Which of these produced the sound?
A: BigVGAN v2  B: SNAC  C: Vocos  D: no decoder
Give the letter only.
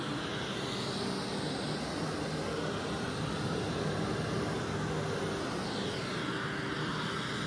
D